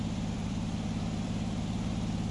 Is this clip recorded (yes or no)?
no